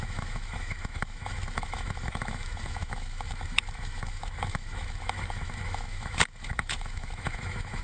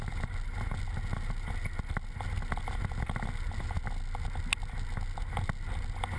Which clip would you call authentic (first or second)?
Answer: second